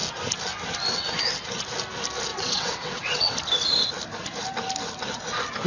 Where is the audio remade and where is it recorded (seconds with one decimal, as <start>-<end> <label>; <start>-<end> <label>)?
0.0-2.3 recorded; 2.3-3.3 remade; 3.3-5.7 recorded